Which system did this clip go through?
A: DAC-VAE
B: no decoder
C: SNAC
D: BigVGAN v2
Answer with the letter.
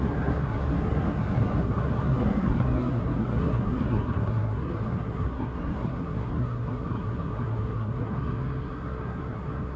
C